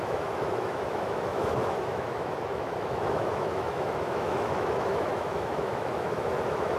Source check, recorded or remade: remade